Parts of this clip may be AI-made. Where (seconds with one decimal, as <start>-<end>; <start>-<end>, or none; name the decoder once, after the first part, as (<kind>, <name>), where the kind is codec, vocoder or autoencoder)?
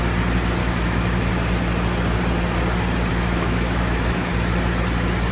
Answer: 0.6-1.3 (autoencoder, DAC-VAE); 3.1-4.3